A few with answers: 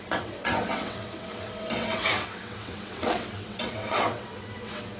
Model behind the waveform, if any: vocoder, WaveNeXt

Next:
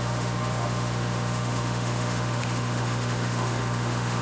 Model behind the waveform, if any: autoencoder, DAC-VAE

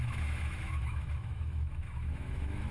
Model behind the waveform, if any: autoencoder, DAC-VAE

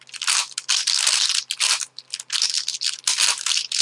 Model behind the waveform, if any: none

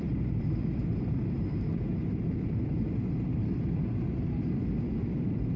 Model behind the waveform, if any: vocoder, BigVGAN v2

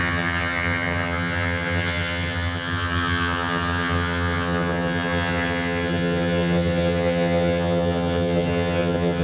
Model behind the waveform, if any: vocoder, HiFi-GAN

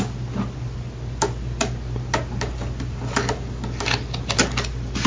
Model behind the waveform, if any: none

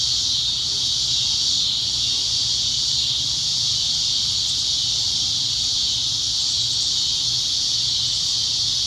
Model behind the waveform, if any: none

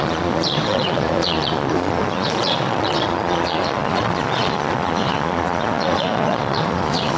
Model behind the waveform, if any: vocoder, Vocos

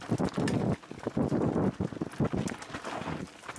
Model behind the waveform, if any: none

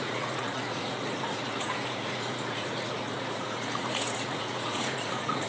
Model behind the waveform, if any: vocoder, Vocos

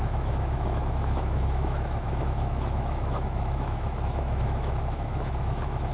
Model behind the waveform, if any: autoencoder, DAC-VAE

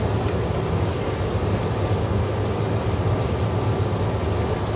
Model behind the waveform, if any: none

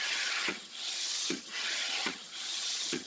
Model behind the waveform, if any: vocoder, HiFi-GAN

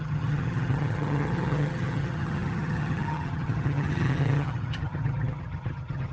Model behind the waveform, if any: vocoder, HiFi-GAN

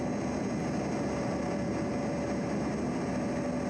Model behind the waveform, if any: none